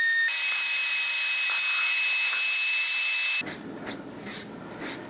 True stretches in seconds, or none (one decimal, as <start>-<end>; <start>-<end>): 0.0-5.1